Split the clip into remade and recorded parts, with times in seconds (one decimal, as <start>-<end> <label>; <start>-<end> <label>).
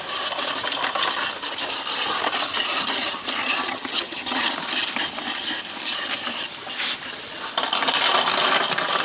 0.0-3.4 recorded; 3.4-4.5 remade; 4.5-9.0 recorded